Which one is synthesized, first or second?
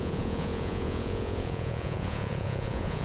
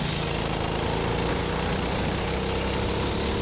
first